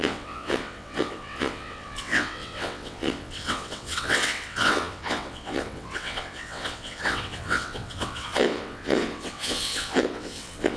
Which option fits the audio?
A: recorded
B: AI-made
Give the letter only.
B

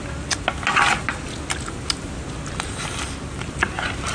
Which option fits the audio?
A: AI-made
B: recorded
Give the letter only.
B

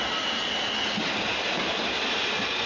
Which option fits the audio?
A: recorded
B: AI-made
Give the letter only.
A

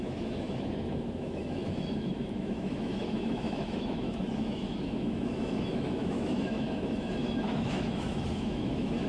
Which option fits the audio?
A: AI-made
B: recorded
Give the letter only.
A